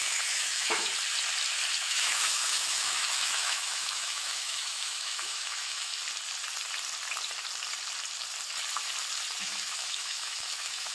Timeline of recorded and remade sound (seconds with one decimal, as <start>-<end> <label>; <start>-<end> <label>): 0.0-0.9 remade; 0.9-1.8 recorded; 1.8-5.9 remade; 5.9-9.4 recorded; 9.4-10.9 remade